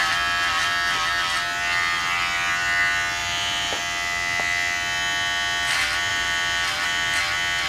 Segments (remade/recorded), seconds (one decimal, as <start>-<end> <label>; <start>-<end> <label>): 0.0-3.2 recorded; 3.2-3.8 remade; 3.8-6.1 recorded; 6.1-7.2 remade; 7.2-7.7 recorded